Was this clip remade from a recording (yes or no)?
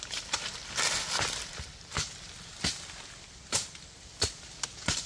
yes